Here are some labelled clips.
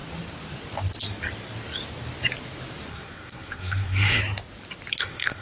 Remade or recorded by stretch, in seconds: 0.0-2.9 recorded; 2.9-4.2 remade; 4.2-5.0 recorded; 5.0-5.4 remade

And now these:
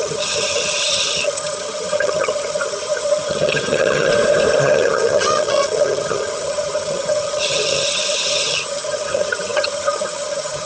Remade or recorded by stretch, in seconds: 0.0-4.1 remade; 4.1-4.6 recorded; 4.6-10.7 remade

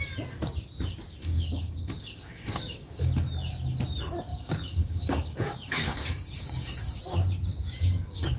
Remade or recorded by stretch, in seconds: 0.0-1.2 recorded; 1.2-3.1 remade; 3.1-4.3 recorded; 4.3-7.0 remade; 7.0-7.5 recorded; 7.5-8.4 remade

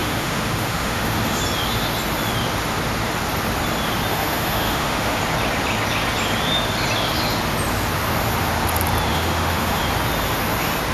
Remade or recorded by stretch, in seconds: 0.0-1.4 remade; 1.4-4.1 recorded; 4.1-5.2 remade; 5.2-9.1 recorded; 9.1-9.8 remade; 9.8-10.9 recorded

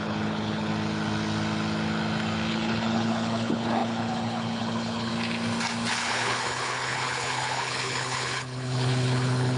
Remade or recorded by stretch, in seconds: 0.0-0.7 remade; 0.7-2.5 recorded; 2.5-5.1 remade; 5.1-5.9 recorded; 5.9-9.6 remade

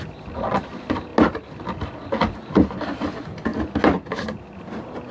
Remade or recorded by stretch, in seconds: 0.0-5.1 recorded

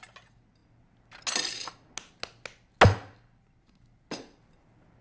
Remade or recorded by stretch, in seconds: 0.0-5.0 recorded